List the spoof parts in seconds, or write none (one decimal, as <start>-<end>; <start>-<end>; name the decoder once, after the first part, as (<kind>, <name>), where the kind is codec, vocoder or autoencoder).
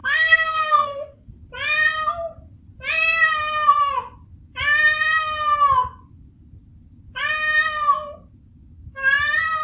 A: 0.0-1.3 (codec, SNAC)